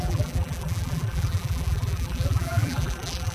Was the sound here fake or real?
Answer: fake